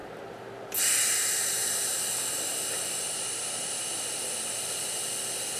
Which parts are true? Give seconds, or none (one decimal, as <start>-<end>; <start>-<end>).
0.0-5.6